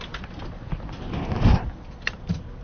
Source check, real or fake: real